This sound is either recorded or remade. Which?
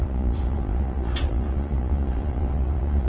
remade